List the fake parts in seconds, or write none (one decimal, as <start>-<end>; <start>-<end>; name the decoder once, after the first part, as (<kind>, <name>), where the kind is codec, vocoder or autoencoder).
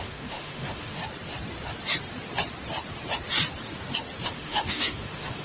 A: 0.0-1.0 (autoencoder, DAC-VAE); 4.2-5.4